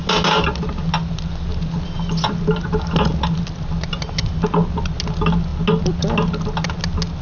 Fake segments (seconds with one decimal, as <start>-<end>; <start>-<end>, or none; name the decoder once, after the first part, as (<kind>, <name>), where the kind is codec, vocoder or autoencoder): none